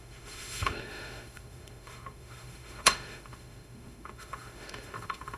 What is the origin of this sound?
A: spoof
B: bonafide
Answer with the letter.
A